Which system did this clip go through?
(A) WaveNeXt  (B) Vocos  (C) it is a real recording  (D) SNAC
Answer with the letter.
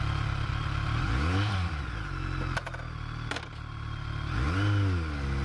C